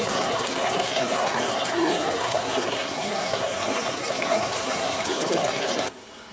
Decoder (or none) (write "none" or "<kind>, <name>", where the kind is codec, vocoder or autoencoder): codec, SNAC